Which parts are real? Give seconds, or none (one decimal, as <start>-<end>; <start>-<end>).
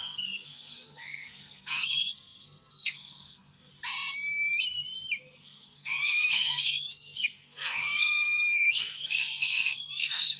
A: 3.7-5.2